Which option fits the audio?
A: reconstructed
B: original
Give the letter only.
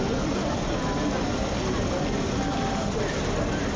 B